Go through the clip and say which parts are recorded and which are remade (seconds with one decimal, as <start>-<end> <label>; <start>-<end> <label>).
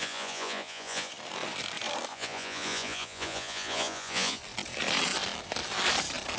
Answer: 0.0-1.1 remade; 1.1-2.1 recorded; 2.1-4.4 remade; 4.4-6.4 recorded